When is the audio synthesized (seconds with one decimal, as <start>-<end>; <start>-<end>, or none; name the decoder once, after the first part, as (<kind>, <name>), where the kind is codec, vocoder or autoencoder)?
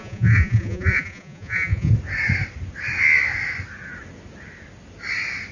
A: 0.0-1.9 (vocoder, Vocos)